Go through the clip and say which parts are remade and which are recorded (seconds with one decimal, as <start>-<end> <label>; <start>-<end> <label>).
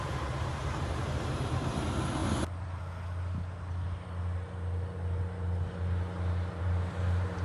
0.0-2.2 remade; 2.2-6.6 recorded; 6.6-7.4 remade